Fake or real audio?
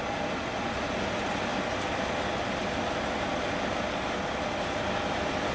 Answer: real